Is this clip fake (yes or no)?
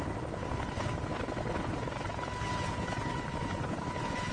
no